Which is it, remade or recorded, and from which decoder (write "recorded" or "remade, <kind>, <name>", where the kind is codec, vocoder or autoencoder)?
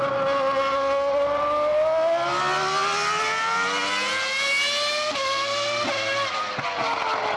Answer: recorded